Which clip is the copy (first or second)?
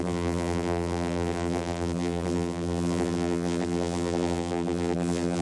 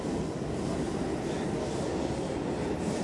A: first